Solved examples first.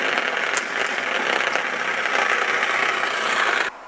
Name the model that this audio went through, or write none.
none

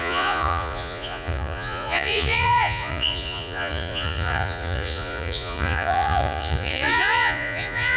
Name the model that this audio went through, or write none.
vocoder, Vocos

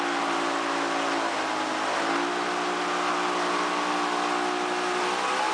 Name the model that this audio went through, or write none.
none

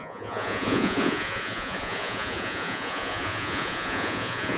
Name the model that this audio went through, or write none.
vocoder, Vocos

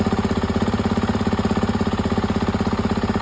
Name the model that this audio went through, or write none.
none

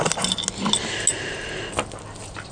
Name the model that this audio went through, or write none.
none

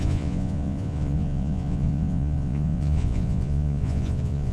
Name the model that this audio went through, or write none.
vocoder, Vocos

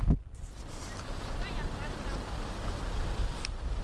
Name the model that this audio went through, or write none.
none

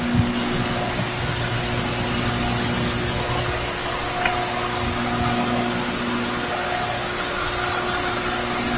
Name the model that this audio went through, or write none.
none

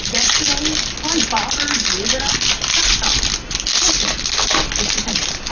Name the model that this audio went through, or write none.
none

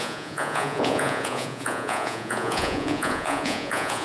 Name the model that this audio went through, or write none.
vocoder, Vocos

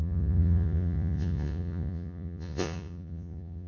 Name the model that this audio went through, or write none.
vocoder, Vocos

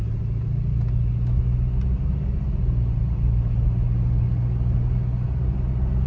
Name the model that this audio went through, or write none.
none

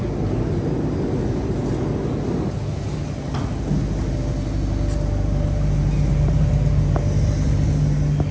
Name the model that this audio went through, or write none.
none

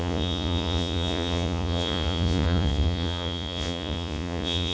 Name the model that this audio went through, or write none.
vocoder, Vocos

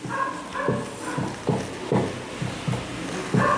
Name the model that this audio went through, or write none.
none